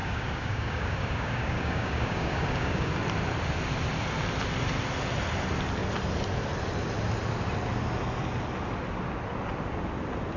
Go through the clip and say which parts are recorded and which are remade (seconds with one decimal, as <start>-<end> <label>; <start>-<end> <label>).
0.0-2.9 remade; 2.9-10.4 recorded